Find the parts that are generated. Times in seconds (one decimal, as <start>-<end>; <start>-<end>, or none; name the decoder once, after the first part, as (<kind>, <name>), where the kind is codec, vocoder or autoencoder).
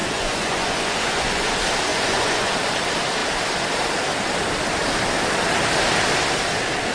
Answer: 0.0-1.5 (vocoder, Vocos); 1.9-2.5